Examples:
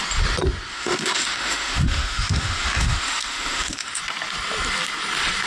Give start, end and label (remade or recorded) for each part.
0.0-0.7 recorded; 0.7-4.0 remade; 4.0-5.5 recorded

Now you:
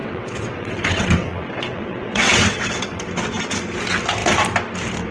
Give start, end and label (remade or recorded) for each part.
0.0-3.1 remade; 3.1-5.1 recorded

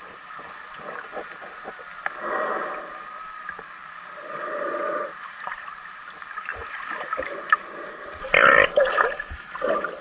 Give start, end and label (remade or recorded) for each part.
0.0-1.4 remade; 1.4-2.6 recorded; 2.6-10.0 remade

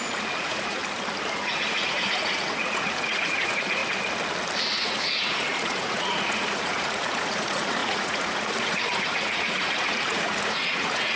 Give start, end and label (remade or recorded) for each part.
0.0-0.8 remade; 0.8-1.3 recorded; 1.3-3.8 remade; 3.8-4.7 recorded; 4.7-11.2 remade